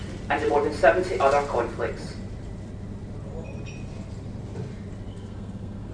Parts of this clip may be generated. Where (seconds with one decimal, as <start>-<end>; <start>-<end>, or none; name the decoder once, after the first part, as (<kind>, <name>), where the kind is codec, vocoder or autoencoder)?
5.1-5.9 (codec, SNAC)